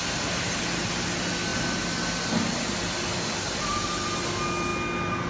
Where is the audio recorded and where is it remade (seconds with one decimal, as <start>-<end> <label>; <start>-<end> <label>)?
0.0-5.3 recorded